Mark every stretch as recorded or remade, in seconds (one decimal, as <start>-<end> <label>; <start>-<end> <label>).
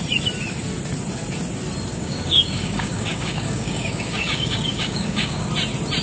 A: 0.0-1.9 recorded; 1.9-5.5 remade; 5.5-6.0 recorded